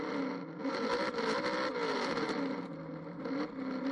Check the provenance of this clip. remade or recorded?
recorded